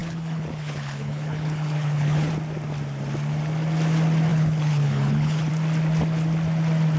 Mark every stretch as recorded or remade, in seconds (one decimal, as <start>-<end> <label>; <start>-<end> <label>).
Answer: 0.0-2.3 remade; 2.3-4.3 recorded; 4.3-5.5 remade; 5.5-7.0 recorded